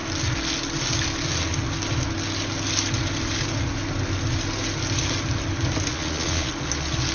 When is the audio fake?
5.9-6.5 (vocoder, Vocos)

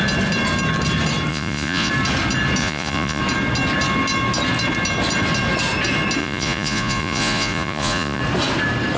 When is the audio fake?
1.3-1.9 (vocoder, Vocos); 2.6-3.2; 6.2-8.2

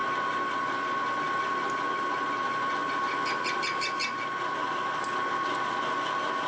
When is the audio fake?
none